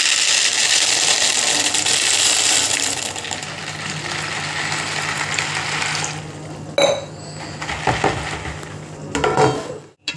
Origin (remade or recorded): recorded